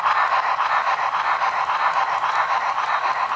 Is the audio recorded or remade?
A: recorded